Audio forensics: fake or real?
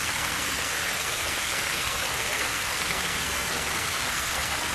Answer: fake